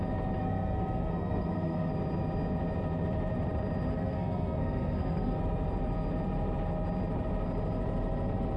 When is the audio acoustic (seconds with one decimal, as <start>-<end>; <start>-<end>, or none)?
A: 0.0-0.4; 1.9-3.9; 5.4-8.6